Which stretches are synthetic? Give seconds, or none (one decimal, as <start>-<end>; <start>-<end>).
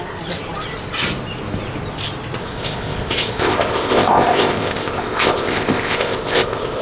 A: 2.4-6.8